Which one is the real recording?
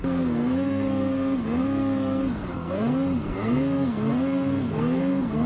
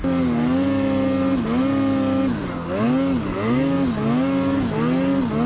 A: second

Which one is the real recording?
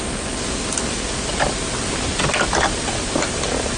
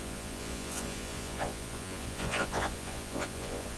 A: first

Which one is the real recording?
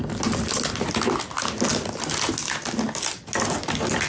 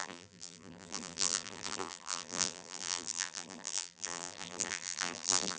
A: first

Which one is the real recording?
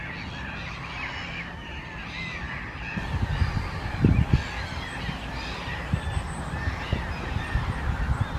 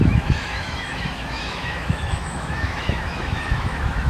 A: first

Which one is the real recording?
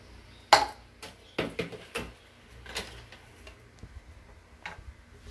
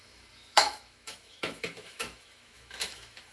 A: first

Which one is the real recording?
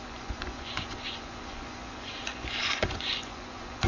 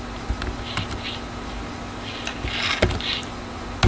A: second